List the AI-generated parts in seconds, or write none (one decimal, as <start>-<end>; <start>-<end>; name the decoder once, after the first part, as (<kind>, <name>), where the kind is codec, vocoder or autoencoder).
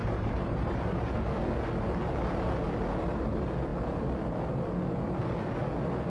0.0-0.8 (vocoder, BigVGAN v2)